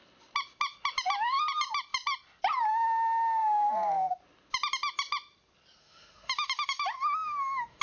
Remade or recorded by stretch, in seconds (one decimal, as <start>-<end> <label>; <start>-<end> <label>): 0.0-5.8 recorded; 5.8-7.8 remade